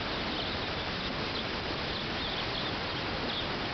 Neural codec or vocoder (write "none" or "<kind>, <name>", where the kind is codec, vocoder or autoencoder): none